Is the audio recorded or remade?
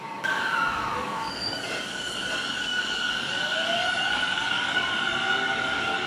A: remade